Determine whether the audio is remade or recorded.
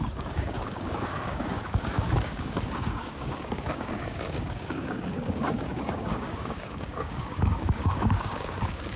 remade